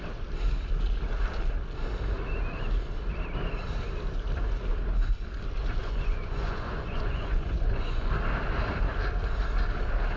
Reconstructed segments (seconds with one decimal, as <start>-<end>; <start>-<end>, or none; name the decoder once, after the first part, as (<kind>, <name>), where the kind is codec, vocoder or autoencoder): 5.8-8.1 (vocoder, Vocos)